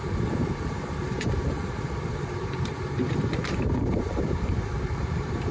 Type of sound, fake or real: fake